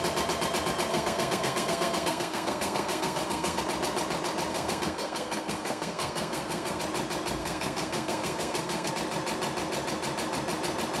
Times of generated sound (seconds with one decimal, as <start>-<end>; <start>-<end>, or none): 0.9-3.6; 4.5-6.8; 7.4-8.9